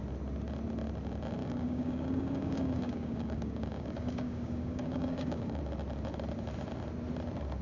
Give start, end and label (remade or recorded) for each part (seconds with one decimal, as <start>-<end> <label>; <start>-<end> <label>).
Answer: 0.0-1.4 recorded; 1.4-5.6 remade; 5.6-7.6 recorded